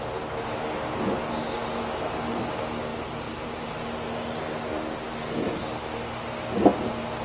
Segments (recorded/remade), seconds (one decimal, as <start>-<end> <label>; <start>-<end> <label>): 0.0-2.9 recorded; 2.9-3.7 remade; 3.7-7.2 recorded